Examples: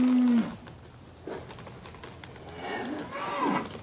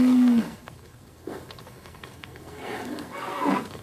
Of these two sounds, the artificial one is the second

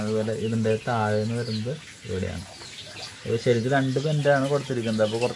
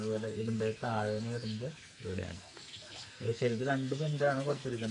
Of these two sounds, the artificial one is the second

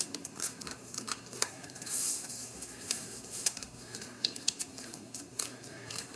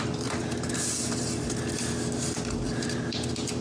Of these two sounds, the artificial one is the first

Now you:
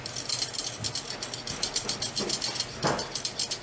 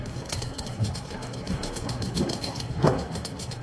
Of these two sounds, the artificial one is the second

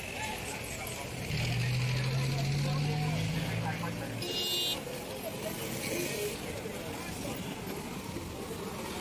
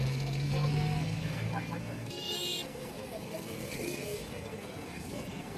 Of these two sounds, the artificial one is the second